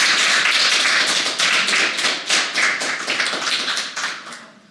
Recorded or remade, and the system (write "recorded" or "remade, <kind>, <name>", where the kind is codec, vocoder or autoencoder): remade, vocoder, BigVGAN v2